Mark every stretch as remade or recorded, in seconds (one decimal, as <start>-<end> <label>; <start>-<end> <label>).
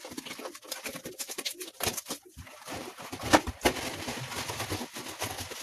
0.0-0.9 recorded; 0.9-3.3 remade; 3.3-5.6 recorded